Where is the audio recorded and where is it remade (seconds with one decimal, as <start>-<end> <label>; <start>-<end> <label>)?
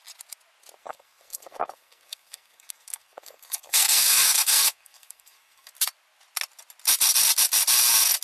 0.0-0.8 recorded; 0.8-5.7 remade; 5.7-8.2 recorded